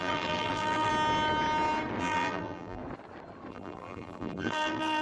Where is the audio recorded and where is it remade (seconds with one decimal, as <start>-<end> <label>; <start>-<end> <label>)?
0.0-0.9 remade; 0.9-2.0 recorded; 2.0-2.8 remade; 2.8-3.5 recorded; 3.5-5.0 remade